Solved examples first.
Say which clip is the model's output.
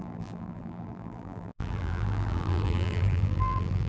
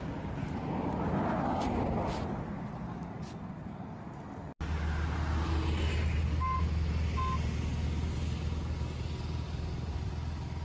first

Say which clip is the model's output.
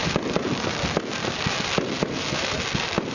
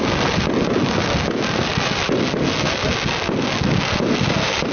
first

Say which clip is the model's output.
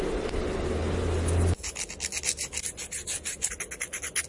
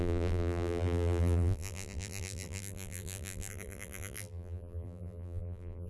second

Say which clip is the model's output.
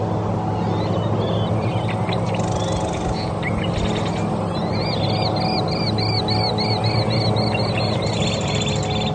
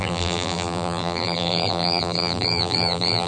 second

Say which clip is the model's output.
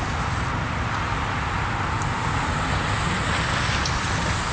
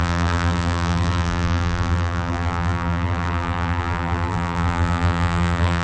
second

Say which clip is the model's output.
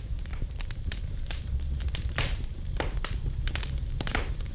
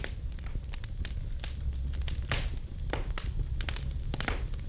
first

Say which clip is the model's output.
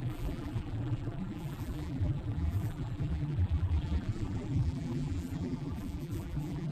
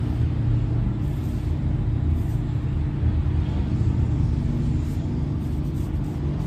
first